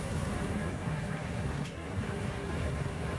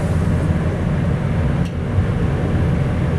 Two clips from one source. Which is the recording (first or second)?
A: second